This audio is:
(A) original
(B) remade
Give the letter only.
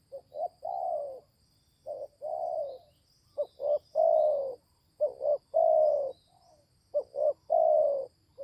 A